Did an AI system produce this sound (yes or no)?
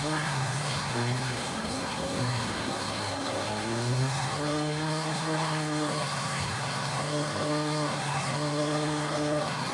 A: yes